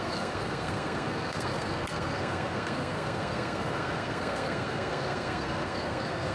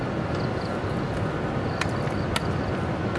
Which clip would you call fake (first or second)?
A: first